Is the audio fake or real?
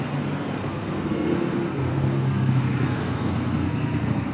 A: fake